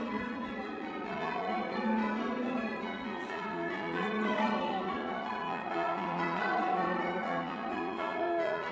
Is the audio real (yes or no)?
no